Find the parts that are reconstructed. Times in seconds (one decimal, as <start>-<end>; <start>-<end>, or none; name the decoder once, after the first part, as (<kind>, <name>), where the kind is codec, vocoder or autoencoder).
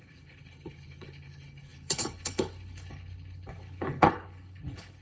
0.0-5.0 (codec, HILCodec)